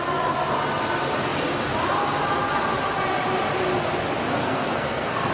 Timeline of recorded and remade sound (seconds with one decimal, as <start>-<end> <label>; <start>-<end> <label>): 0.0-4.4 recorded; 4.4-5.3 remade